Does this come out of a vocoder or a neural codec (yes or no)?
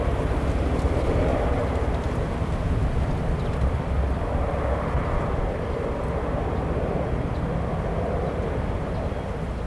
no